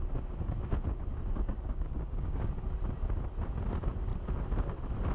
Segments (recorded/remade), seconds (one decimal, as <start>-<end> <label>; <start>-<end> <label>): 0.0-1.5 recorded; 1.5-2.5 remade; 2.5-5.1 recorded